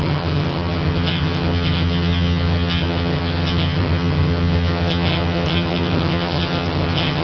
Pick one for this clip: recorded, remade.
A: remade